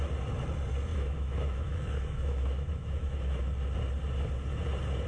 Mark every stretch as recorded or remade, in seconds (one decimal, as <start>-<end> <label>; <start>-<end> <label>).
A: 0.0-0.9 recorded; 0.9-3.4 remade; 3.4-5.1 recorded